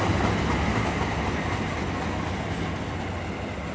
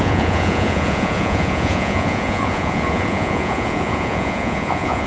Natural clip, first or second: first